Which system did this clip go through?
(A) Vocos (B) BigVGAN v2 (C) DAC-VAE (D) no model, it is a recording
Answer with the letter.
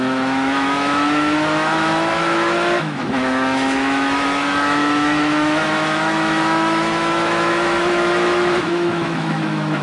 C